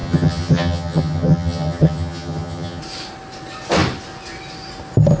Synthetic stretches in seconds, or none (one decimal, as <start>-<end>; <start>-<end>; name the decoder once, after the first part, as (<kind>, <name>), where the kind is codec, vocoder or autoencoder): 0.0-2.8 (vocoder, HiFi-GAN)